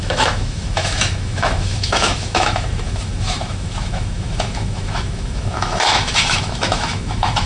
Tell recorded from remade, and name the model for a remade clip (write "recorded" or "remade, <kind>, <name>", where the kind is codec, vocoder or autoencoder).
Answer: remade, autoencoder, DAC-VAE